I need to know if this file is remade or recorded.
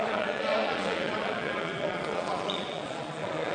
remade